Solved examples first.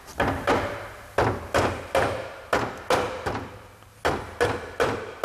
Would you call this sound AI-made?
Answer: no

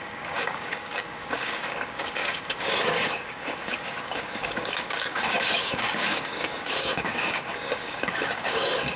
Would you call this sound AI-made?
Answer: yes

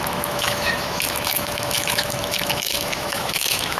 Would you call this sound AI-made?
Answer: yes